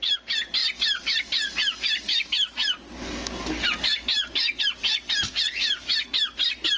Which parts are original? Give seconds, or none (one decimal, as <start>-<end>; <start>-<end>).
0.0-6.8